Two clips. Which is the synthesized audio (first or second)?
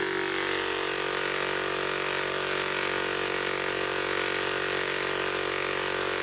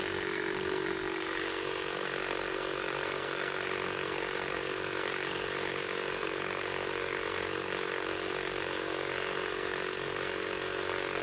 second